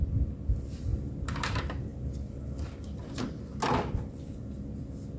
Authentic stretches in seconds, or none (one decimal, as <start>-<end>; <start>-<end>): 0.0-0.9; 1.5-5.2